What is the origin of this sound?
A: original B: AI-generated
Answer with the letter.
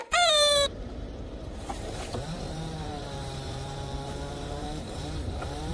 B